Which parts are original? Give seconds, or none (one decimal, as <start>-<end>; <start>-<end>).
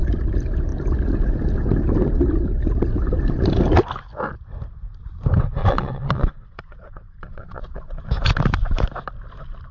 0.0-5.6; 8.1-9.7